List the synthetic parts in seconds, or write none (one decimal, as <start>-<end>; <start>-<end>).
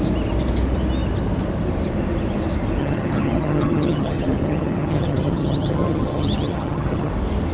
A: 2.8-7.1